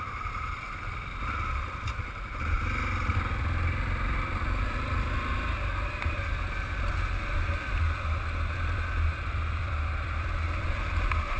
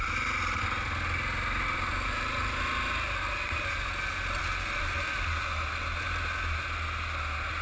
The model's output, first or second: first